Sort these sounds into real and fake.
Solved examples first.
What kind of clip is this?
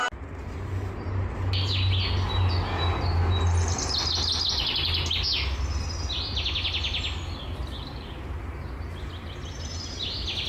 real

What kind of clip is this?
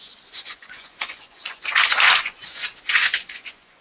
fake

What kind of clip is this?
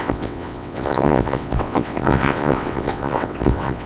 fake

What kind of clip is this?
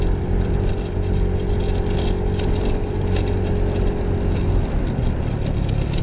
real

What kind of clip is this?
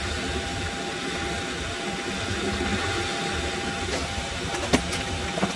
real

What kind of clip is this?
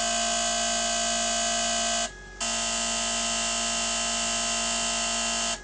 real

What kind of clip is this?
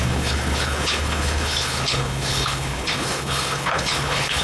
fake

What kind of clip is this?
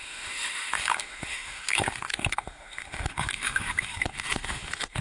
fake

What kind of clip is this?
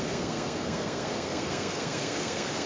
fake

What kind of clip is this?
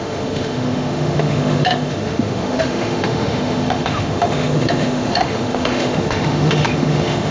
fake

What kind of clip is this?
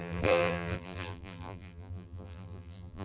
fake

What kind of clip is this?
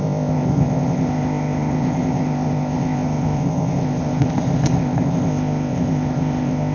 fake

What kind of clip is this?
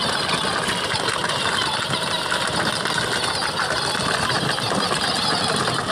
real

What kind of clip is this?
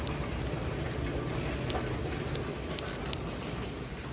real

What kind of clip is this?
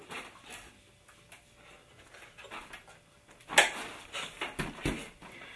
real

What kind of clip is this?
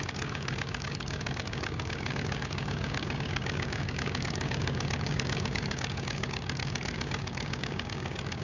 fake